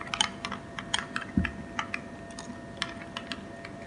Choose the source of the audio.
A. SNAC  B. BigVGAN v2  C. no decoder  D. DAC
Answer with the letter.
C